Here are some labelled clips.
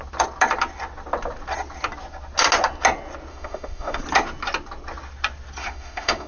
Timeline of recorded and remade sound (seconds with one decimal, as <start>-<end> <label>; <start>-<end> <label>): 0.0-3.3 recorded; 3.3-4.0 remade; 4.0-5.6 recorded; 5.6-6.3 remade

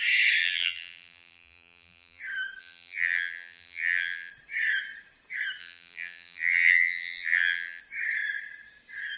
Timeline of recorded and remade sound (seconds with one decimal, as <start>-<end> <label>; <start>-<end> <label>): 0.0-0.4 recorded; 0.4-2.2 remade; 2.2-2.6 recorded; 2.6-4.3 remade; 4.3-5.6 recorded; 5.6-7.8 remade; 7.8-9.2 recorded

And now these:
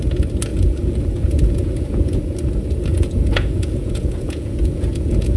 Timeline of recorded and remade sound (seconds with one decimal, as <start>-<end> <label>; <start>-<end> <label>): 0.0-0.5 recorded; 0.5-2.2 remade; 2.2-2.9 recorded; 2.9-5.4 remade